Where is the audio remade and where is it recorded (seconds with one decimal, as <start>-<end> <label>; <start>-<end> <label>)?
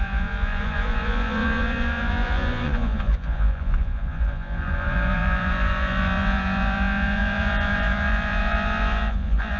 0.0-9.6 remade